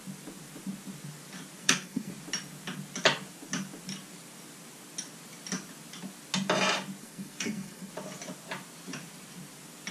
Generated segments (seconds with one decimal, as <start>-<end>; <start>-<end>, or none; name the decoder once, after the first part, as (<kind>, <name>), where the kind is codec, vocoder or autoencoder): 1.6-2.1 (codec, SNAC); 7.0-7.9